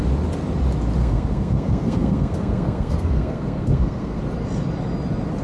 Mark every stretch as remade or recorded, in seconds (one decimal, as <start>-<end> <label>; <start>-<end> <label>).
0.0-1.0 recorded; 1.0-4.2 remade; 4.2-5.4 recorded